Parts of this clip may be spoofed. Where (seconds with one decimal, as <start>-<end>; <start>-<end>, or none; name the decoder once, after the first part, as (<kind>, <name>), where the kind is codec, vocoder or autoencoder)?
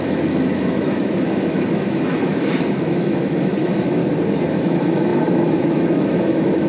0.0-4.0 (autoencoder, DAC-VAE); 4.6-6.7